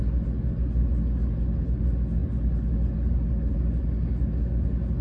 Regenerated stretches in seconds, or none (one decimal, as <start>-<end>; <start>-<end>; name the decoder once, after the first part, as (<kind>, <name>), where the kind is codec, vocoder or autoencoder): none